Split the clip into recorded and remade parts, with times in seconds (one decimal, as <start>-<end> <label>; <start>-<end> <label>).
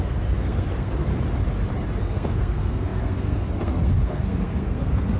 0.0-1.1 remade; 1.1-2.0 recorded; 2.0-5.2 remade